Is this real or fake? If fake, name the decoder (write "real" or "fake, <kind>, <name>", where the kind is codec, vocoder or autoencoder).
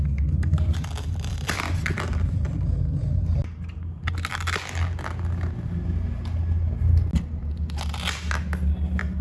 real